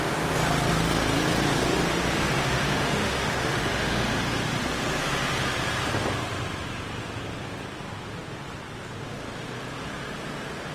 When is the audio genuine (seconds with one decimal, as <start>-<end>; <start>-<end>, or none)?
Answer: 0.0-2.4; 4.2-10.7